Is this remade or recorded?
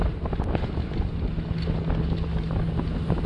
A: recorded